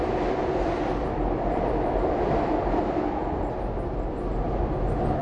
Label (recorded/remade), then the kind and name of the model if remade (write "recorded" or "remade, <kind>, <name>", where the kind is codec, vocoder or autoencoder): recorded